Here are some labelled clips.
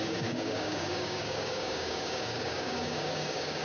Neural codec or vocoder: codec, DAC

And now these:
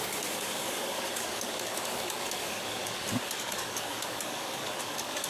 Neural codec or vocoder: codec, DAC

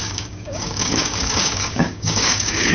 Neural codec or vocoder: codec, DAC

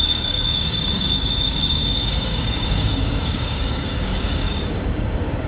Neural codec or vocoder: codec, DAC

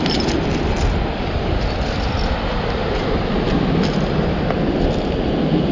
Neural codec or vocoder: none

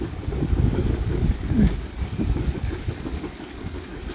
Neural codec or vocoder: codec, DAC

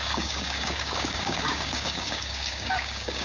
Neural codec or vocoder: codec, DAC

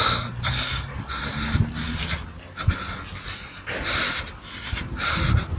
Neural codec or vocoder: none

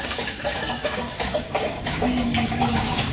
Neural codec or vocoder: codec, DAC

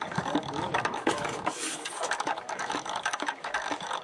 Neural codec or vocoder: codec, DAC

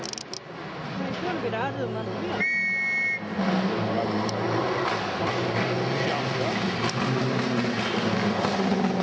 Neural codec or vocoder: none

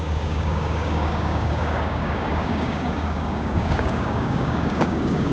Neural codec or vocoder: codec, DAC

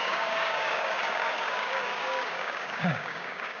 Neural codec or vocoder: codec, DAC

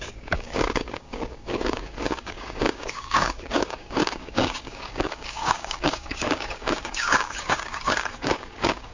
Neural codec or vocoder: codec, DAC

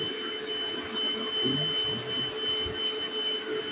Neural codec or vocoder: none